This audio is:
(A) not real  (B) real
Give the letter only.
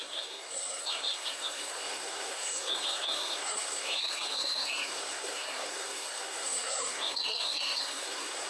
A